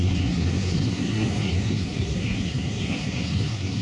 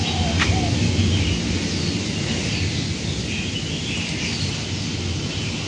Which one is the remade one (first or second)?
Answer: first